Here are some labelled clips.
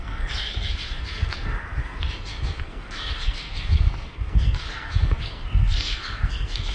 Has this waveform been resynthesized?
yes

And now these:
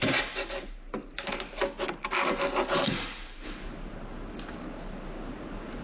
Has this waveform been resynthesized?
no